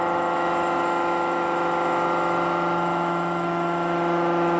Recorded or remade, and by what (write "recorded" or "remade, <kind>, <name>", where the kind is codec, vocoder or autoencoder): remade, autoencoder, DAC-VAE